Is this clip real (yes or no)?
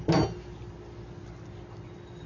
yes